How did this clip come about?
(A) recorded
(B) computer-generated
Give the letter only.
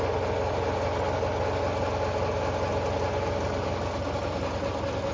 A